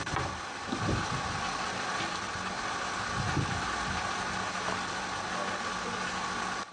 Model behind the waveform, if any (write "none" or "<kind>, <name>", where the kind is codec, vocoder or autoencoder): none